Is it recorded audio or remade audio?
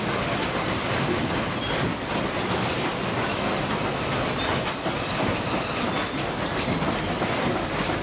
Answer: remade